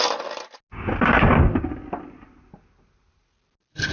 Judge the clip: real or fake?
real